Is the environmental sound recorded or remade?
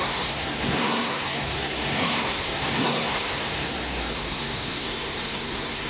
remade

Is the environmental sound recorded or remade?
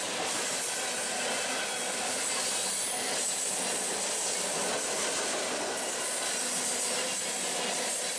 recorded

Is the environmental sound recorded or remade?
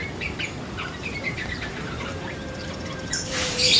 remade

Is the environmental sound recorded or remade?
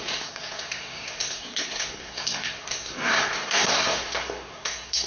remade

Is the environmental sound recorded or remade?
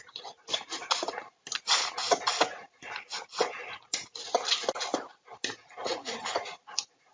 recorded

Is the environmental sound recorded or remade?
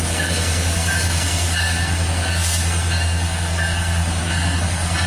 remade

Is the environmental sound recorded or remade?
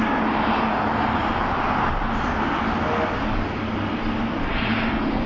recorded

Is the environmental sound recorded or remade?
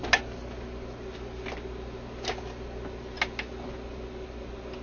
recorded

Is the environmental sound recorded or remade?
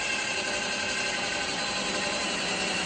recorded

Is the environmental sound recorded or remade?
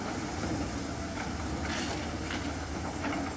recorded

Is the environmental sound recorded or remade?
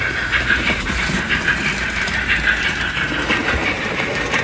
remade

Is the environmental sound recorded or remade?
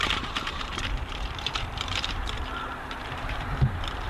remade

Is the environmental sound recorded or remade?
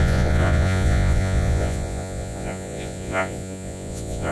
remade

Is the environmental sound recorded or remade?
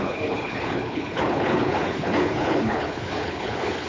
remade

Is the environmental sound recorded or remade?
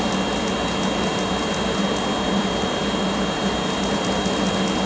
recorded